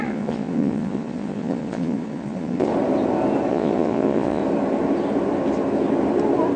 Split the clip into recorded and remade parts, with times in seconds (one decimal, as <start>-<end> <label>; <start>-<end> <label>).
0.0-2.7 remade; 2.7-3.5 recorded; 3.5-4.4 remade; 4.4-6.6 recorded